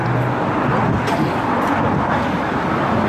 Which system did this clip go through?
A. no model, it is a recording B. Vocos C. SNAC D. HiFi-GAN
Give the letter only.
A